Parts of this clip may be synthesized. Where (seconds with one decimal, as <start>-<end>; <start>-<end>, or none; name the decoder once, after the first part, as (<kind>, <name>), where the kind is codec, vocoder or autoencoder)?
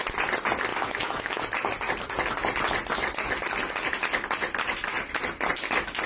0.7-1.4 (autoencoder, DAC-VAE)